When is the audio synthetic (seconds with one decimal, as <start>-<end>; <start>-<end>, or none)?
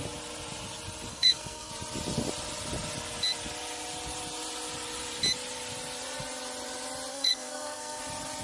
1.1-1.7; 7.1-8.0